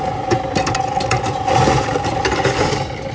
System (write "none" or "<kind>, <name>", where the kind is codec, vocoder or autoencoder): none